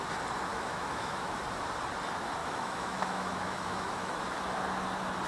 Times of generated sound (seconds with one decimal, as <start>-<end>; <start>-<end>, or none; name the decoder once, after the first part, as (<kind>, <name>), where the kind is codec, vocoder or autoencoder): 0.5-1.4 (autoencoder, DAC-VAE); 2.4-4.2